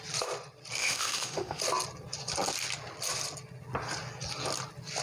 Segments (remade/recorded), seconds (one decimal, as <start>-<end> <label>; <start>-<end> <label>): 0.0-0.8 recorded; 0.8-1.6 remade; 1.6-5.0 recorded